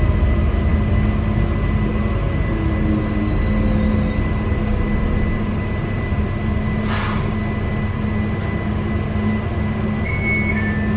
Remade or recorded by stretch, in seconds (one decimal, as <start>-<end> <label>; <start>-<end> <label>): 0.0-11.0 recorded